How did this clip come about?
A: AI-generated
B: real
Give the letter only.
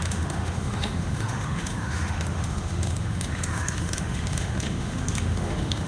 A